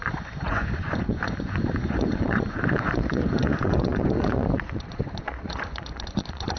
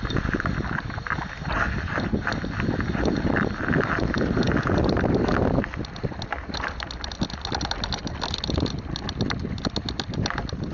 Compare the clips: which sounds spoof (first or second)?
first